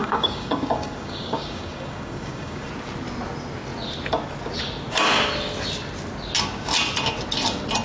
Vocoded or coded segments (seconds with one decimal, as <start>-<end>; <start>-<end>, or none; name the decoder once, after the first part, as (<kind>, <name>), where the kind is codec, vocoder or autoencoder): 0.0-2.7 (codec, DAC)